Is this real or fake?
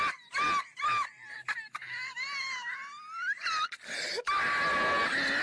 real